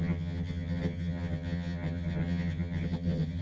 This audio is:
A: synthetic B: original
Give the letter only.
A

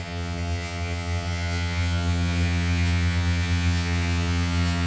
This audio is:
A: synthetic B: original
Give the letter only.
A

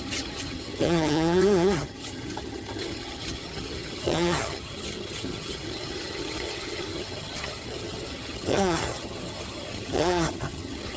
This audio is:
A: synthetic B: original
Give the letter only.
A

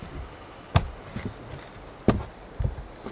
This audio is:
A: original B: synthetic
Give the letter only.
A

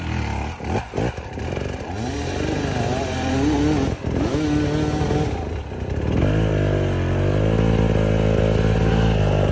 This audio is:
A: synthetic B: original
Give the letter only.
B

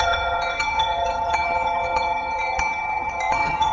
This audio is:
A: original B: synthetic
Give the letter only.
B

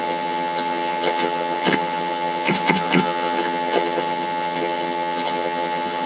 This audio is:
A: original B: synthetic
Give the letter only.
B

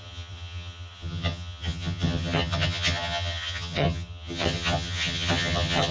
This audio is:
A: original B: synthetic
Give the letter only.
B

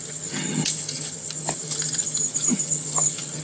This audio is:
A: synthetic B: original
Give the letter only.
A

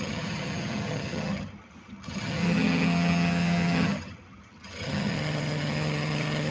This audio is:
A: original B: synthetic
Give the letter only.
B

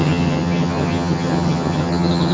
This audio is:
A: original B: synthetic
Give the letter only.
B